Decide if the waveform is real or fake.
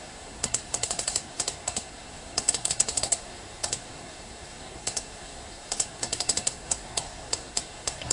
fake